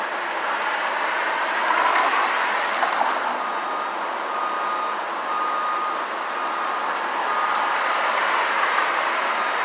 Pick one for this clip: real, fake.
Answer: real